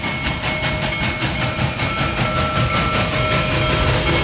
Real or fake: real